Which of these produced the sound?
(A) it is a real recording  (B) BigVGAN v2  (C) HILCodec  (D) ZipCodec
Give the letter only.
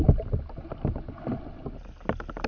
A